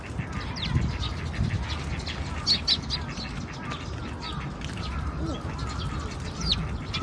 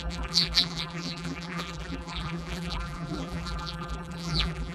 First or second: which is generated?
second